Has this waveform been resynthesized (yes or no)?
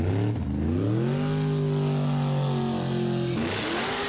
no